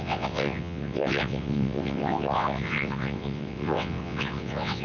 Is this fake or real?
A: fake